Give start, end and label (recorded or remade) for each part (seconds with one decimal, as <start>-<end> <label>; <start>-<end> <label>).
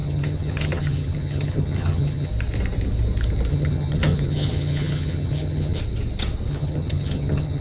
0.0-2.3 remade; 2.3-3.5 recorded; 3.5-5.8 remade; 5.8-6.5 recorded; 6.5-7.6 remade